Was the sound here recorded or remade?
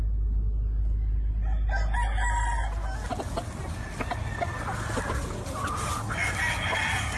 recorded